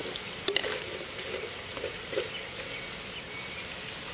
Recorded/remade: recorded